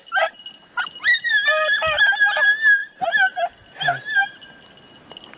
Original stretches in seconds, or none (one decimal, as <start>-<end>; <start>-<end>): 0.0-5.4

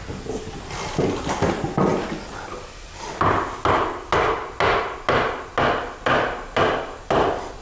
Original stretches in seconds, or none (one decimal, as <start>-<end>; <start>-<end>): 0.0-7.6

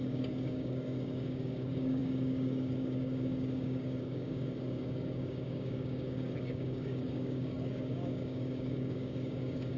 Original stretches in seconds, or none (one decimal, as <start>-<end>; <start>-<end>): none

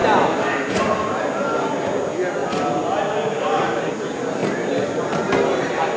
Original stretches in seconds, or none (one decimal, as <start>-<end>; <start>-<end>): 0.0-6.0

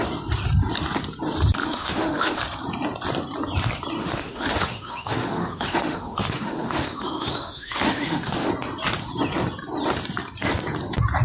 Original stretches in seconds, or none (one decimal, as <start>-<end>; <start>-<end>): 0.0-1.6; 2.4-4.0; 8.5-11.2